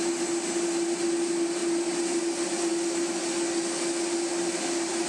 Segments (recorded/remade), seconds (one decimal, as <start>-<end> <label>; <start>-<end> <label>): 0.0-5.1 recorded